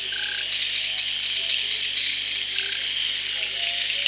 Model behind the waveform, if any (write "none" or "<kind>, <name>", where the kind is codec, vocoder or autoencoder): none